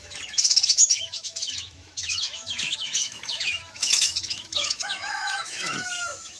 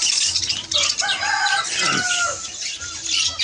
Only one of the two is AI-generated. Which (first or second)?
first